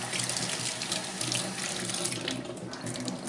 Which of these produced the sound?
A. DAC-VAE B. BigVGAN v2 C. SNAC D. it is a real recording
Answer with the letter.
D